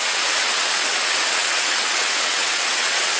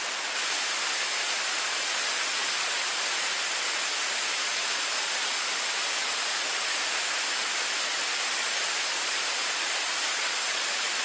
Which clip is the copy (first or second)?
first